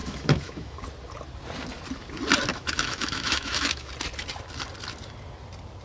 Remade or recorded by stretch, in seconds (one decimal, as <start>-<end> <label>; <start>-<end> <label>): 0.0-0.8 remade; 0.8-2.5 recorded; 2.5-3.9 remade; 3.9-5.8 recorded